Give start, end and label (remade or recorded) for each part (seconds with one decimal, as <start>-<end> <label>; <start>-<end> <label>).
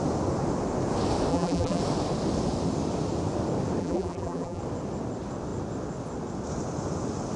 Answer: 0.0-1.3 recorded; 1.3-1.8 remade; 1.8-3.8 recorded; 3.8-4.6 remade; 4.6-7.4 recorded